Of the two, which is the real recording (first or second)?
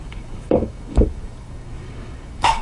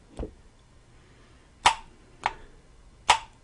second